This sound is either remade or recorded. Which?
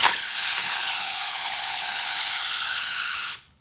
remade